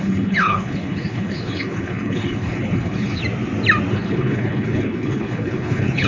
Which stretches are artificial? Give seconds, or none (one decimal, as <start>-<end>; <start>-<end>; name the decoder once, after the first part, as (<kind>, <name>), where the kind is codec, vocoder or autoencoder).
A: 0.0-3.2 (codec, HILCodec); 3.9-6.1

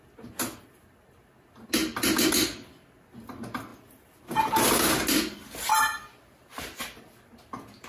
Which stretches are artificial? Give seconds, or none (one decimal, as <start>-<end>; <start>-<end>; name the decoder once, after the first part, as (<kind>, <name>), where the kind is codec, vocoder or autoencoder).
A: none

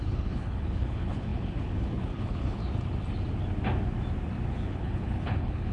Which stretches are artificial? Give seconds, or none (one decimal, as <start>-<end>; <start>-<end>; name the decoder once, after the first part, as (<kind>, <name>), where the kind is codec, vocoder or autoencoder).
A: 0.0-2.6 (codec, HILCodec); 4.5-5.7

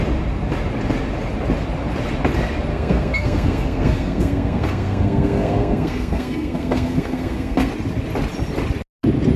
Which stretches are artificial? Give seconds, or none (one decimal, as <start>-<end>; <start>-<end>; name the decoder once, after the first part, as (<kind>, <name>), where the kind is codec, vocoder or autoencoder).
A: 2.7-7.7 (codec, SNAC)

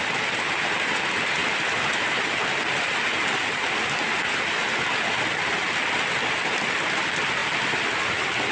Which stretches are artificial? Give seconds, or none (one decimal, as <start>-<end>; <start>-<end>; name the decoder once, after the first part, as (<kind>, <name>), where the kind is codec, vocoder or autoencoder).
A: none

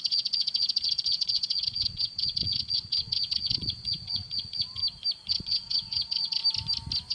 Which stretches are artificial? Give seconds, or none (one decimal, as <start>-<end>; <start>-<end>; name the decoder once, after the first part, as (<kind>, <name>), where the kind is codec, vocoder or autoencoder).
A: 0.0-4.8 (vocoder, WaveNeXt); 5.3-6.4